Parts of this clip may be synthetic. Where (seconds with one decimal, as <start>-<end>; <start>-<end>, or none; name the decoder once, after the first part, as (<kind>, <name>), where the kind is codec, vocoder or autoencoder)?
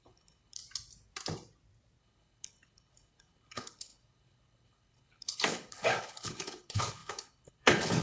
0.0-0.6 (codec, HILCodec); 2.0-8.0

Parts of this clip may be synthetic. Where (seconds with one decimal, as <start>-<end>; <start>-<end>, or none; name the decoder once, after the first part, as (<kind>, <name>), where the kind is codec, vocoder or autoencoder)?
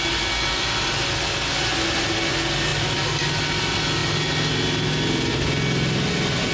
none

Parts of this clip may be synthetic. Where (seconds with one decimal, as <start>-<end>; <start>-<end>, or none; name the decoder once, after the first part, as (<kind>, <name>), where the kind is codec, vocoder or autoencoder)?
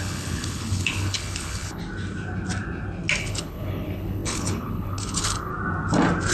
0.0-1.8 (codec, HILCodec); 3.2-5.5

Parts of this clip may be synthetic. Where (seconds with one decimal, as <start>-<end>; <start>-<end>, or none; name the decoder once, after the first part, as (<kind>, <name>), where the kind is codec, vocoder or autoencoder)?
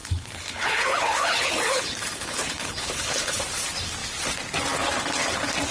0.0-3.4 (codec, HILCodec)